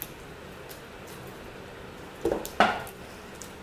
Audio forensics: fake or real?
real